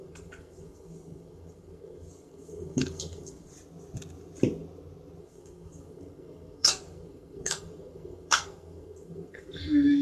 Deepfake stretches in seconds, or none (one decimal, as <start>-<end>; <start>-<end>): 0.0-3.5; 5.2-10.0